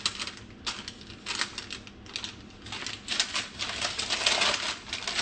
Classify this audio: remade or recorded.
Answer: recorded